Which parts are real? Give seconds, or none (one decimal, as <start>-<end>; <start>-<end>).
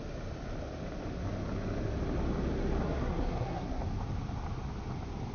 0.0-2.8; 3.8-5.3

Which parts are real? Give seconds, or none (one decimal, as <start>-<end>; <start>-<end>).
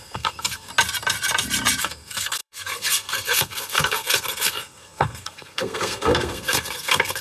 0.7-1.8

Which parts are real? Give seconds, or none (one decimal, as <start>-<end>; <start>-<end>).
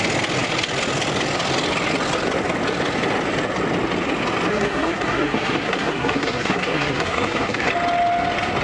0.0-4.5; 7.7-8.6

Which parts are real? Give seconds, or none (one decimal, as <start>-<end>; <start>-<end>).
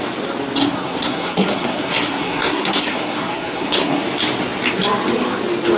0.0-0.6; 4.0-5.8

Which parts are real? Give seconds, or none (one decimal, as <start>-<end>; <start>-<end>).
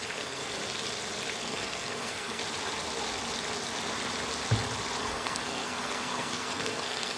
0.6-1.4; 2.4-5.0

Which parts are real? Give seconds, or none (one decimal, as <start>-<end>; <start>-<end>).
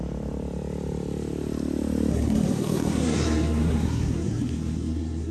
0.0-2.1